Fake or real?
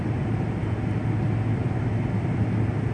real